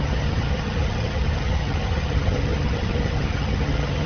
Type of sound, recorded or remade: remade